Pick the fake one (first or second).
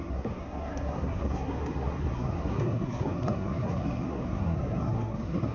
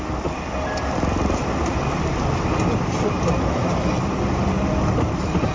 first